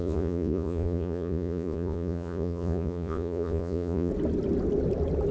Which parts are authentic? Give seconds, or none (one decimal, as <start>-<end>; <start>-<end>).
4.1-5.3

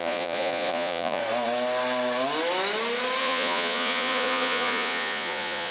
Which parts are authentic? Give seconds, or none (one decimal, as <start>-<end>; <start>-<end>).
1.2-3.2

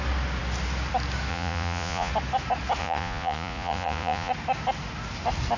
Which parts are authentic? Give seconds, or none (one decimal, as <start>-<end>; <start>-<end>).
0.0-1.3; 2.1-2.8; 4.3-5.6